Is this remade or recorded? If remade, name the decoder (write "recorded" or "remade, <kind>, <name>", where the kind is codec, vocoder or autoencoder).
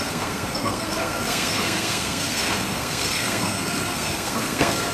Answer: remade, codec, SNAC